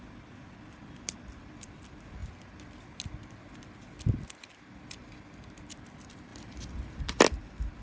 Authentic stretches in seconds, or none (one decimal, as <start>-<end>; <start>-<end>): 2.2-5.7